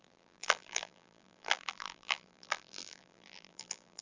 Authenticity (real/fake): fake